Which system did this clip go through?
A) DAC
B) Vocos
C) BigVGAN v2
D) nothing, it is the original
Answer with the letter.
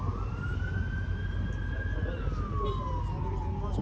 D